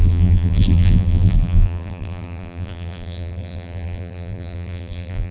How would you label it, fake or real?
fake